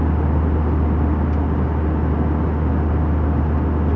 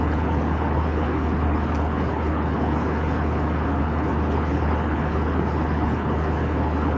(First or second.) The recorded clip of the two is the first